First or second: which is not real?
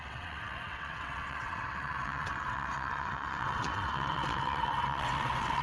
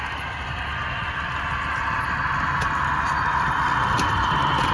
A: first